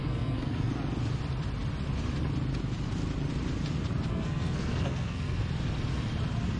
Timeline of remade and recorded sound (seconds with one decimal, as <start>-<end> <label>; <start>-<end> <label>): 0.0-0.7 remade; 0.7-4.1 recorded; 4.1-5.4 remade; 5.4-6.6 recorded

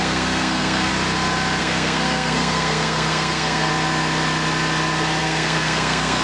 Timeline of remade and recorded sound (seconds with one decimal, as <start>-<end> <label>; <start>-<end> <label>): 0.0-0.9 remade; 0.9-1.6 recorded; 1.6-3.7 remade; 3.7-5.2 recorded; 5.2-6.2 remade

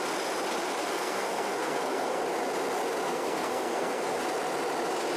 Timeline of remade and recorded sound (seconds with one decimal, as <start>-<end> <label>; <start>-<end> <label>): 0.0-0.8 recorded; 0.8-2.2 remade; 2.2-3.1 recorded; 3.1-4.2 remade; 4.2-5.2 recorded

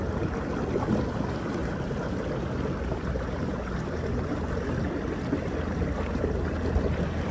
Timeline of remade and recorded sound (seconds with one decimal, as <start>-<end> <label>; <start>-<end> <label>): 0.0-7.3 recorded

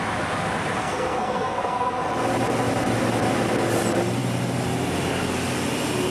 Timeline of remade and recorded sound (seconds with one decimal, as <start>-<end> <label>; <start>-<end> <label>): 0.0-0.8 recorded; 0.8-2.0 remade; 2.0-6.1 recorded

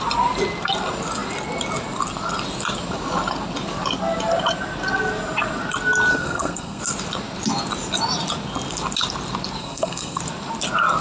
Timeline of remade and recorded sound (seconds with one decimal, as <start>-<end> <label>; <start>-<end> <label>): 0.0-6.1 recorded; 6.1-6.8 remade; 6.8-9.6 recorded; 9.6-10.2 remade; 10.2-11.0 recorded

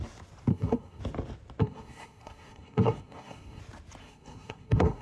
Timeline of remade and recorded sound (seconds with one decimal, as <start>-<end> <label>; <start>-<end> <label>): 0.0-0.5 recorded; 0.5-1.0 remade; 1.0-1.6 recorded; 1.6-3.6 remade; 3.6-4.0 recorded; 4.0-5.0 remade